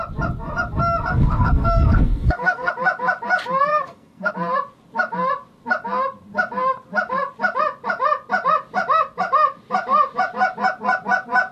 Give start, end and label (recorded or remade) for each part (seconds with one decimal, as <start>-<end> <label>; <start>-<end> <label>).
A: 0.0-1.1 recorded; 1.1-2.7 remade; 2.7-3.7 recorded; 3.7-4.3 remade; 4.3-11.5 recorded